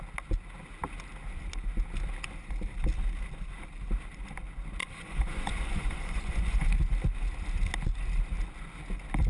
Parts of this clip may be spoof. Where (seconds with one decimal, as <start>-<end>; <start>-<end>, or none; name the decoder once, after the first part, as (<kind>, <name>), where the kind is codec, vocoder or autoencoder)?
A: 4.8-6.7 (vocoder, Vocos)